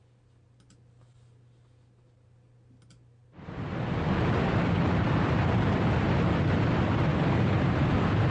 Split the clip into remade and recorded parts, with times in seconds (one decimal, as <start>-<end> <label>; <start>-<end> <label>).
0.0-8.3 recorded